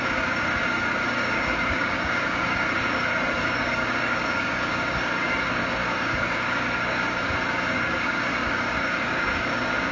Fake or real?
fake